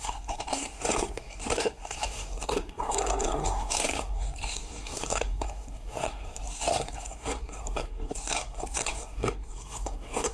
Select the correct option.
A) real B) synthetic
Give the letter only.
B